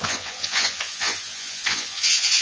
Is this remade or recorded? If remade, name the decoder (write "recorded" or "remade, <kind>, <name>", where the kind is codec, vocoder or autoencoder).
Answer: remade, vocoder, Vocos